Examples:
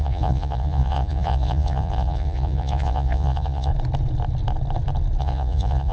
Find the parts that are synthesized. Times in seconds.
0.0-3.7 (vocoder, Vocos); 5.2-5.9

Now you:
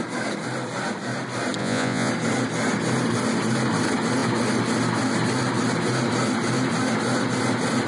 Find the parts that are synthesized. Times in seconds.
1.6-2.1 (vocoder, Vocos)

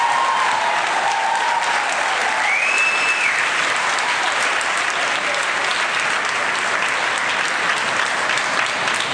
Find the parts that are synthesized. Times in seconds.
none

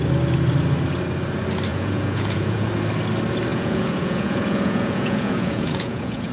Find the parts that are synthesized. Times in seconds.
1.7-2.7 (vocoder, Vocos); 3.5-6.3

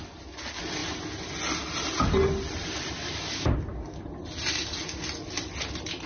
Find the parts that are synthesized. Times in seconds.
none

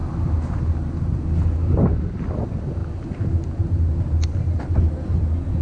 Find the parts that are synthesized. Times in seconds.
none

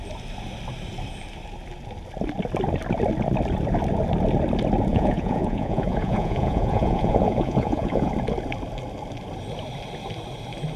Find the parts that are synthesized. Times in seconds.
4.9-8.1 (vocoder, Vocos)